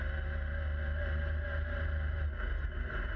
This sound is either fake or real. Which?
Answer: real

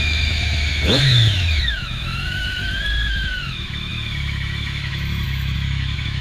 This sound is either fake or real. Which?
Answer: fake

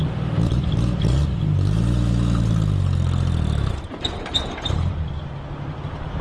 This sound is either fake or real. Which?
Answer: real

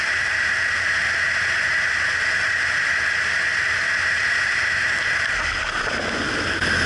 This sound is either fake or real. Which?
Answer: real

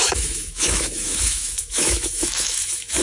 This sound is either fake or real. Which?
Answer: fake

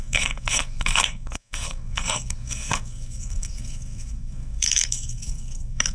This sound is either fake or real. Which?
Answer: fake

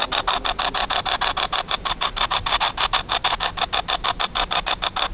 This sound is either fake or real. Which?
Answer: real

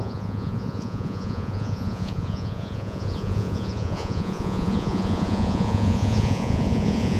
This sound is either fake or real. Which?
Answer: fake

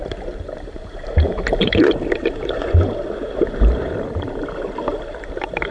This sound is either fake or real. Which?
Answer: fake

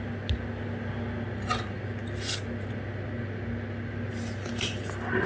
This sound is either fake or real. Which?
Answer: real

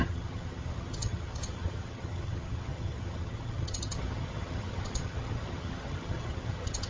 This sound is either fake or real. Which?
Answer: fake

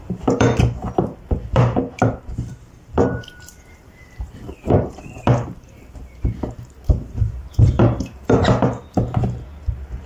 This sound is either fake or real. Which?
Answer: fake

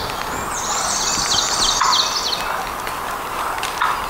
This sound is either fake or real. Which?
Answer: real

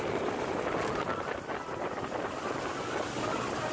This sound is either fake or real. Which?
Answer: real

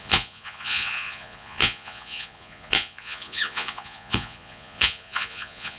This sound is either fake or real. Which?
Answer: fake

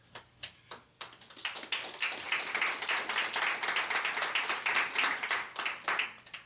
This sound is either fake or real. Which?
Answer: real